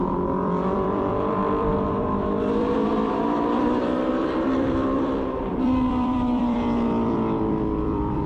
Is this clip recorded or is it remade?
remade